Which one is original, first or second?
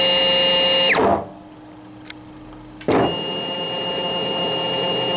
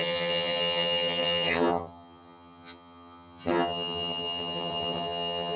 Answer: first